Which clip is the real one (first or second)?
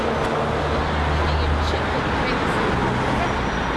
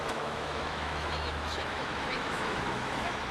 first